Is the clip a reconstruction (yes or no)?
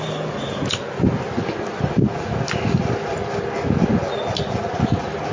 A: no